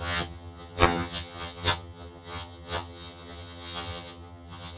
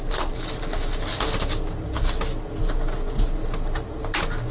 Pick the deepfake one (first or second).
first